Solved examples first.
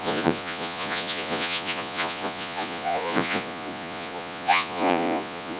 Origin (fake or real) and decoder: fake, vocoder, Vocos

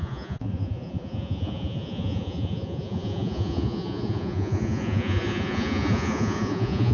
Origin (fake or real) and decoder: fake, vocoder, Vocos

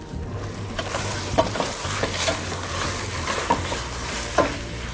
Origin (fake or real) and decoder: fake, vocoder, BigVGAN v2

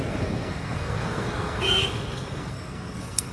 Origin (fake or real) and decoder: fake, codec, SNAC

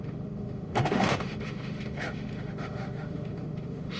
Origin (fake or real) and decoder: fake, autoencoder, DAC-VAE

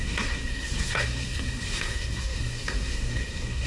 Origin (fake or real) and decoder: fake, codec, SNAC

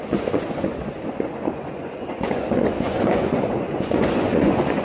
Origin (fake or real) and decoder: fake, vocoder, Vocos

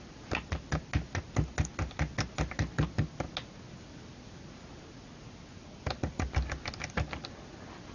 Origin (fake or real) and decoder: real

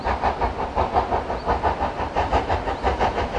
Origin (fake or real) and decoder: real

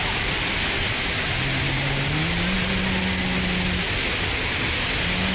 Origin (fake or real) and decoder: real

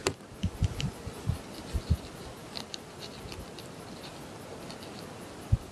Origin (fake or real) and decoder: real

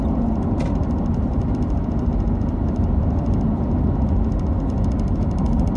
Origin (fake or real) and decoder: real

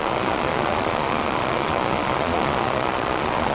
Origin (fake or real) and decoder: fake, vocoder, Vocos